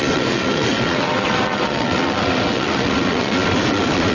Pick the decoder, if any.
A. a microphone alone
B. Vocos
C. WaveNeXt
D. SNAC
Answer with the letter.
C